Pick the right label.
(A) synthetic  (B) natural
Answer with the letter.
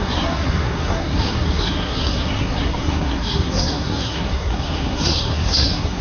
A